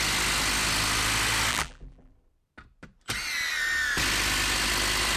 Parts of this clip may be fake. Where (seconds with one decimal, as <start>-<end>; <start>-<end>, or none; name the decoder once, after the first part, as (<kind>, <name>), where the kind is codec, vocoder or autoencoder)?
1.5-2.1 (vocoder, BigVGAN v2)